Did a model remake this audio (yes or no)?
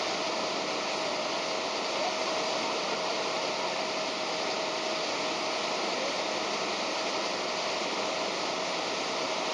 no